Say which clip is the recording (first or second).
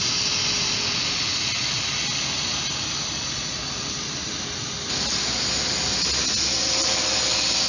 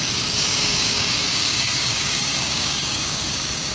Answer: first